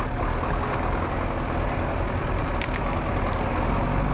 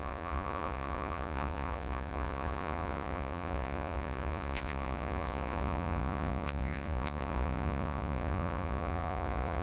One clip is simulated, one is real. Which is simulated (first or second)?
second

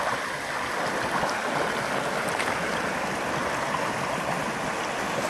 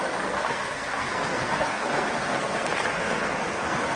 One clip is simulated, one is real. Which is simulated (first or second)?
second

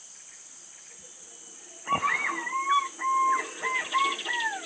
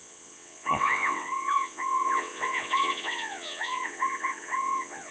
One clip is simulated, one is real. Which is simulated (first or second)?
second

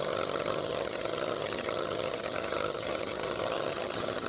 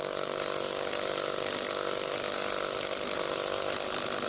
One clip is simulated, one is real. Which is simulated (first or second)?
first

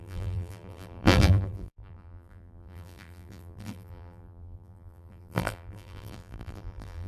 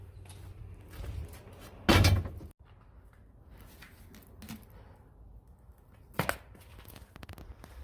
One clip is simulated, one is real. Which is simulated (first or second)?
first